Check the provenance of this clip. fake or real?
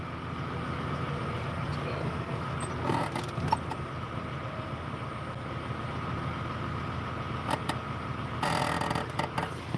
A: real